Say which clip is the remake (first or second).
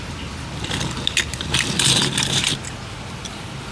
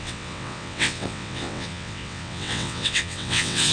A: second